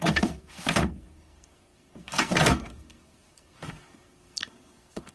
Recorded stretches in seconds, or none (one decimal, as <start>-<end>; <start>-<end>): none